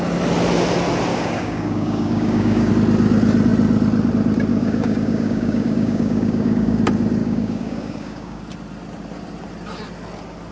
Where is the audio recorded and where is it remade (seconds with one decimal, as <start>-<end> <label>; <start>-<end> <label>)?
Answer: 0.0-1.1 recorded; 1.1-2.7 remade; 2.7-4.5 recorded; 4.5-6.8 remade; 6.8-7.2 recorded; 7.2-8.4 remade; 8.4-10.5 recorded